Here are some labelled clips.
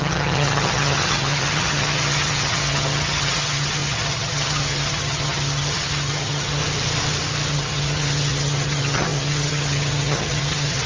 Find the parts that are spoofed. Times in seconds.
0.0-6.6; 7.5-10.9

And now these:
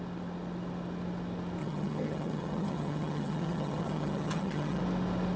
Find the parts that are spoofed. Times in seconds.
1.6-4.8

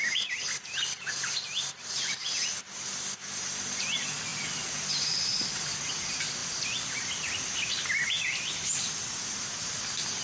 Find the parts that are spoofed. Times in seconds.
none

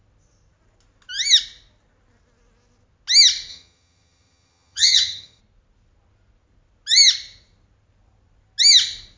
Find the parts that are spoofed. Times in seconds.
3.5-5.4